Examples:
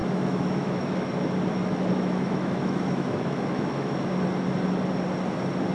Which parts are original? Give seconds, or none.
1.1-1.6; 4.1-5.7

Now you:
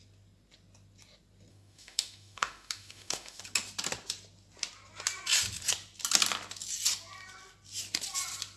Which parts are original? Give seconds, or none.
0.0-1.5; 3.4-8.6

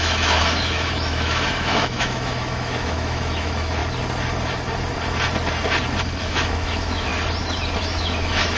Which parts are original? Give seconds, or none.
3.8-6.2; 7.1-7.8

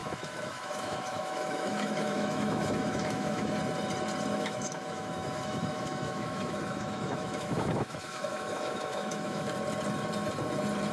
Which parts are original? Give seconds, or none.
3.6-4.3; 9.5-10.9

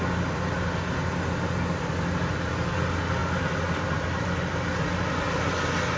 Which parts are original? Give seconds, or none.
0.0-6.0

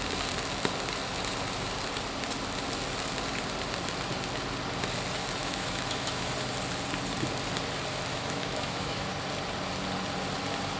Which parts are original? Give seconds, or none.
0.0-5.4; 6.3-8.1; 9.1-10.8

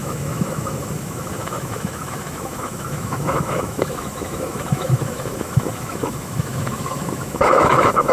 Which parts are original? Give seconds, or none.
none

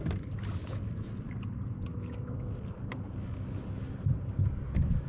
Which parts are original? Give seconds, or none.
0.0-1.9; 2.6-5.1